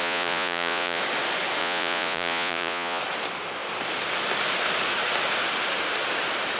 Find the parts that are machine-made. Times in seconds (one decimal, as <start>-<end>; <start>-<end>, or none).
0.0-1.0; 1.6-3.0